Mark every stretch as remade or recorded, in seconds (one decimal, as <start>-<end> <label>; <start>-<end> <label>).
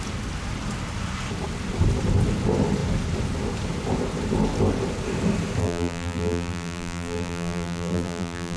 0.0-5.6 recorded; 5.6-8.6 remade